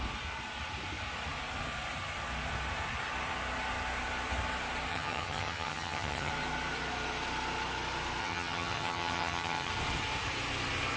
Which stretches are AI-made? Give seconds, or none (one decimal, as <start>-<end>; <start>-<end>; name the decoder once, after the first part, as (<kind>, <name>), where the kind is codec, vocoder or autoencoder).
4.9-6.3 (vocoder, HiFi-GAN); 8.2-9.7